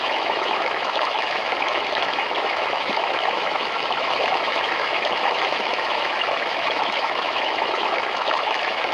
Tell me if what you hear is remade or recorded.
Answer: remade